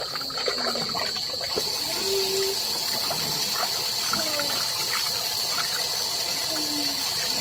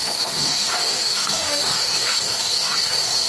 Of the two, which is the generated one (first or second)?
second